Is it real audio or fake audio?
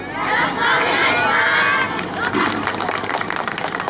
real